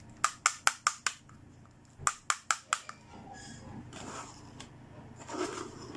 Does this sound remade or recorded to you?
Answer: recorded